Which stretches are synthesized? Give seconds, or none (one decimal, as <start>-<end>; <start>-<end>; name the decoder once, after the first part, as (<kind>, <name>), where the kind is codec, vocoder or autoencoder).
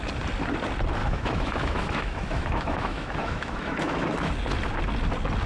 1.0-4.3 (autoencoder, DAC-VAE)